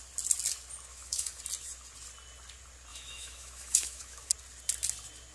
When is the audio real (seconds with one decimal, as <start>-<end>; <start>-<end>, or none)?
0.0-0.9; 1.4-2.9; 4.3-5.3